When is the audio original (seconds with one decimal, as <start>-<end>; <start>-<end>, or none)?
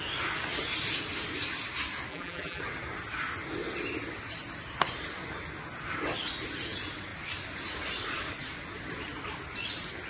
0.0-2.1; 2.6-10.1